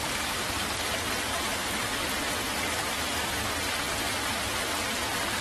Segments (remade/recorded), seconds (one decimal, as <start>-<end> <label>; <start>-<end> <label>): 0.0-5.4 recorded